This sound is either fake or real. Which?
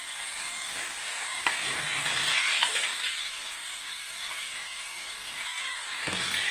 fake